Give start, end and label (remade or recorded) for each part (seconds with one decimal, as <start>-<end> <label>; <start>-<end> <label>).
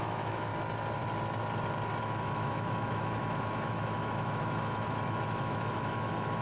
0.0-0.5 remade; 0.5-2.0 recorded; 2.0-6.4 remade